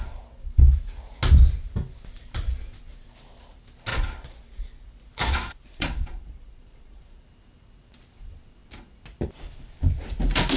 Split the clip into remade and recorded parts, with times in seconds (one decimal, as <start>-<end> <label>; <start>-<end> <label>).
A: 0.0-3.9 recorded; 3.9-7.2 remade; 7.2-10.6 recorded